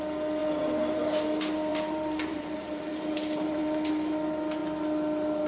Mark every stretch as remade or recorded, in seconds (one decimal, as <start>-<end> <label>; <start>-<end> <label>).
0.0-0.4 recorded; 0.4-1.0 remade; 1.0-1.7 recorded; 1.7-3.9 remade; 3.9-5.5 recorded